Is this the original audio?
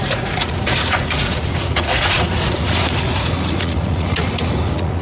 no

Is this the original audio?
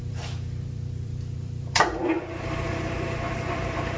no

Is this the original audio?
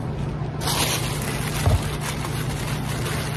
yes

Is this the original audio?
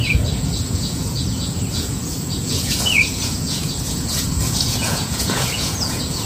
no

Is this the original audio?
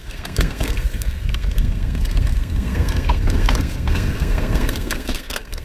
no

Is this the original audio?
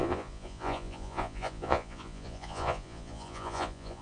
no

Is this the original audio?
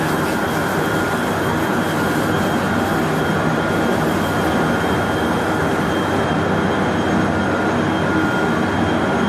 yes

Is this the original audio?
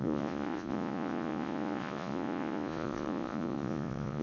no